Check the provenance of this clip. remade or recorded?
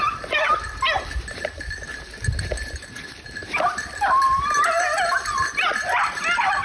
recorded